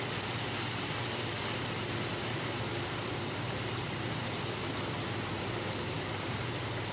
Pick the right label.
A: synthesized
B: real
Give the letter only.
B